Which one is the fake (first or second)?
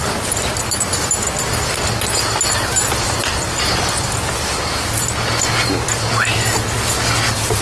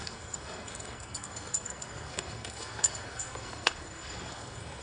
second